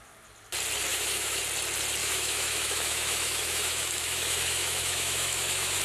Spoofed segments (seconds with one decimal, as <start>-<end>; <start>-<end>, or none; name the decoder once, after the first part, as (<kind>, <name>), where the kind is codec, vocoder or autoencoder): 0.9-1.4 (autoencoder, DAC-VAE); 2.0-5.8

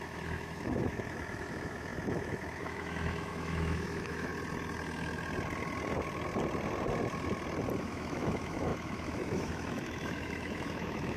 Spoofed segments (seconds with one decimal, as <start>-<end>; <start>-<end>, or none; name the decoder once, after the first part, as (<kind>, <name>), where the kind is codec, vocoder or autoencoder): 0.0-4.3 (autoencoder, DAC-VAE); 7.8-11.2

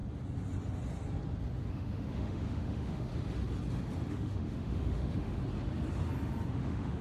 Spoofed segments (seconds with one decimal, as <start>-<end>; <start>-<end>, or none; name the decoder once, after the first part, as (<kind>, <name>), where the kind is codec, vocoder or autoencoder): 1.7-3.1 (autoencoder, DAC-VAE); 4.1-5.4; 6.5-7.0

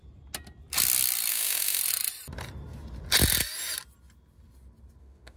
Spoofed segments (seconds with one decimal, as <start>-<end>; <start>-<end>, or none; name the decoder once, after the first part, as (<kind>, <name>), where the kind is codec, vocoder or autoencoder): 1.3-1.8 (autoencoder, DAC-VAE); 5.0-5.4

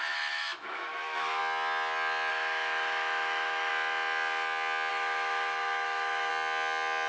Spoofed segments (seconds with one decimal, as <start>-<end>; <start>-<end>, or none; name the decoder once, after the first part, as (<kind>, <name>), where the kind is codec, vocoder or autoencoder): 0.0-1.4 (autoencoder, DAC-VAE); 2.3-3.7; 4.9-6.3